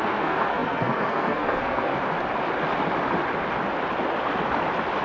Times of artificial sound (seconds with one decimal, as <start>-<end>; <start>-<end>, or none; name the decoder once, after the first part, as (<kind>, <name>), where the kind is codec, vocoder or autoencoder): 0.0-1.9 (codec, SNAC)